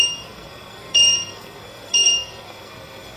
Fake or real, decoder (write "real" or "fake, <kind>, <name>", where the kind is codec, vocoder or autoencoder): fake, codec, SNAC